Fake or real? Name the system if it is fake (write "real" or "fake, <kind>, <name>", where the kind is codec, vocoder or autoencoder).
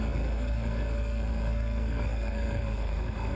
fake, codec, SNAC